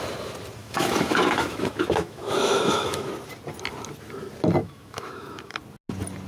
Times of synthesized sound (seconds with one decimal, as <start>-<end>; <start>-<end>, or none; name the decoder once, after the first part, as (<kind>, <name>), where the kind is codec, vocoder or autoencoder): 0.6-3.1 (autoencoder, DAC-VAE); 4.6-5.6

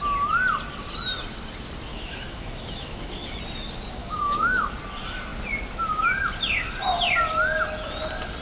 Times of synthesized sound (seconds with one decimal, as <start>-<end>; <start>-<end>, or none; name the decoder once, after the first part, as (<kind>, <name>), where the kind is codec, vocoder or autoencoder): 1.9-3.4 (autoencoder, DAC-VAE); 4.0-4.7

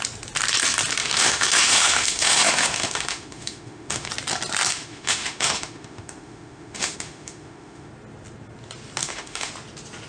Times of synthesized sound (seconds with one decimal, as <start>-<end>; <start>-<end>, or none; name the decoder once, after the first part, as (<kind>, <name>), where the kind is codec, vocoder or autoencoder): 1.0-4.1 (autoencoder, DAC-VAE); 4.7-7.9; 9.0-9.5

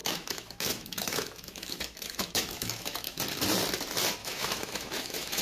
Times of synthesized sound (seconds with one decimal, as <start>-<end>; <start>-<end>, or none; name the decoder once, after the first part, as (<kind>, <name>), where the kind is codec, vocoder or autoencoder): 0.0-3.2 (autoencoder, DAC-VAE); 4.2-5.4

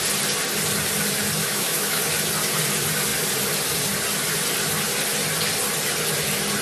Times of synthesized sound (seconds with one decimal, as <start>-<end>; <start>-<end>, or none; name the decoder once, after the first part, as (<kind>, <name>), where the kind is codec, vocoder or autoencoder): 1.4-2.0 (autoencoder, DAC-VAE)